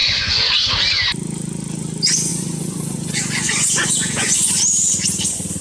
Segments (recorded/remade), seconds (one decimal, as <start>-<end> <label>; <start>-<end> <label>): 0.0-0.7 remade; 0.7-2.3 recorded; 2.3-4.6 remade; 4.6-5.6 recorded